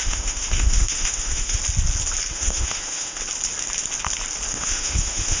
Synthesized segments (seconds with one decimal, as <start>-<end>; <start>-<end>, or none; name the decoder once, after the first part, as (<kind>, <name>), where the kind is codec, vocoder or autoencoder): 0.0-1.6 (autoencoder, DAC-VAE); 2.3-3.2; 4.5-5.4